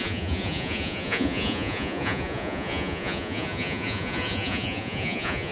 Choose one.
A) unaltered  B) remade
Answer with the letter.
B